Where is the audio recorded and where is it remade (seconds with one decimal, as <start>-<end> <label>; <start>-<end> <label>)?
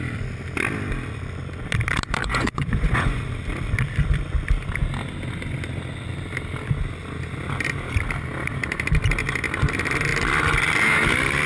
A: 0.0-2.2 recorded; 2.2-3.2 remade; 3.2-11.5 recorded